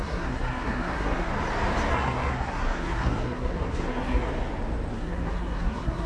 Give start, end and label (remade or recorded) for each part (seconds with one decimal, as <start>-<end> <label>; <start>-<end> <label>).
0.0-1.3 remade; 1.3-1.9 recorded; 1.9-4.3 remade; 4.3-4.9 recorded; 4.9-6.1 remade